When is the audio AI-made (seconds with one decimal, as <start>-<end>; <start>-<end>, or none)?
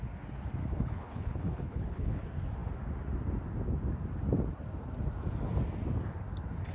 0.6-2.2